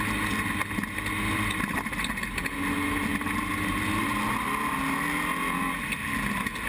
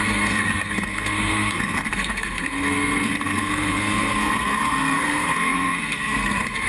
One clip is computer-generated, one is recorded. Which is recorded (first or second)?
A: first